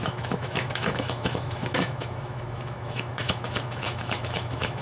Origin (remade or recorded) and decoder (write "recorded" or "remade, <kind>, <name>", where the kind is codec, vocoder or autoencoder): remade, autoencoder, DAC-VAE